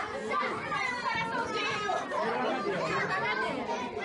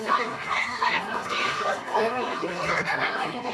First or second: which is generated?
second